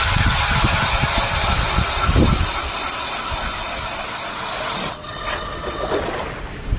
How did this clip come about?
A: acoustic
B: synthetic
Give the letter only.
A